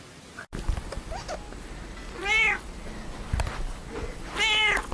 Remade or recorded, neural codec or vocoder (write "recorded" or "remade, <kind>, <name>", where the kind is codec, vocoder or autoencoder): recorded